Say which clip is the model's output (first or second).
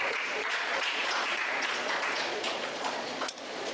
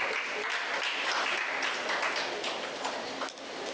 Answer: first